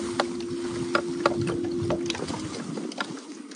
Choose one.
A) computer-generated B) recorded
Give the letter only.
B